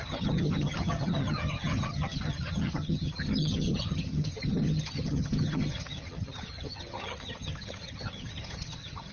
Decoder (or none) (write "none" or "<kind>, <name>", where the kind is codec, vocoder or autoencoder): vocoder, HiFi-GAN